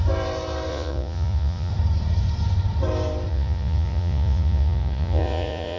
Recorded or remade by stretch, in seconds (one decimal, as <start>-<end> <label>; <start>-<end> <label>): 0.0-0.7 recorded; 0.7-1.7 remade; 1.7-3.3 recorded; 3.3-5.8 remade